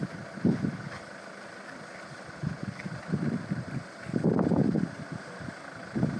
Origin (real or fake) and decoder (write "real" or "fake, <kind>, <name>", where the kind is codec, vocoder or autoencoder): real